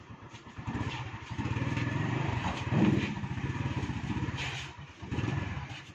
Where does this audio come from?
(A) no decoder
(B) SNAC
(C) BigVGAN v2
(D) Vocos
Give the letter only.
C